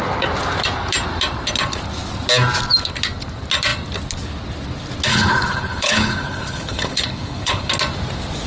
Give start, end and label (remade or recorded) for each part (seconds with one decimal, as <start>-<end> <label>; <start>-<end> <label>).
0.0-5.1 recorded; 5.1-7.7 remade; 7.7-8.5 recorded